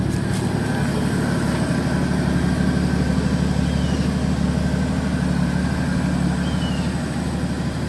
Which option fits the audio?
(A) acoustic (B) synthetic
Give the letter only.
A